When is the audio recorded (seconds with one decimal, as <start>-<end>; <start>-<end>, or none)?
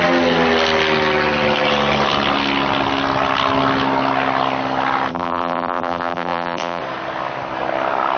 0.0-5.1; 6.8-8.2